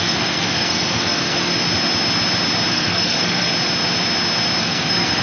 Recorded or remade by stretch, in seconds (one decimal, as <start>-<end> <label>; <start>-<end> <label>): 0.0-1.5 remade; 1.5-2.7 recorded; 2.7-3.5 remade; 3.5-4.6 recorded; 4.6-5.2 remade